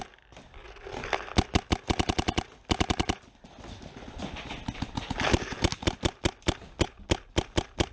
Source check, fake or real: real